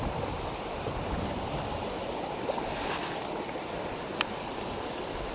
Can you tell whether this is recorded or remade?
remade